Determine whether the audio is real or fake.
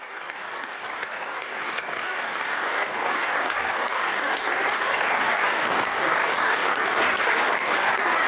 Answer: fake